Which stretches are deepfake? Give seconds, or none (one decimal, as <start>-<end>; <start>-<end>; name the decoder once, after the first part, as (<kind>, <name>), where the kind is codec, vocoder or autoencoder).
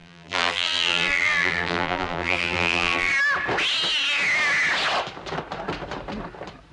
0.0-3.1 (vocoder, BigVGAN v2)